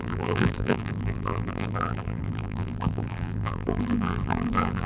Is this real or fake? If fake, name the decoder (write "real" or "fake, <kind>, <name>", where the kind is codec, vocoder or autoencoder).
fake, vocoder, BigVGAN v2